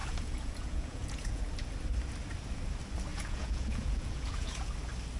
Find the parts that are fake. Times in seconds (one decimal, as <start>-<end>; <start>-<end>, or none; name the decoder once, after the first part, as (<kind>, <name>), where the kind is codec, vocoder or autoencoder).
0.0-1.4 (vocoder, Vocos); 3.1-4.7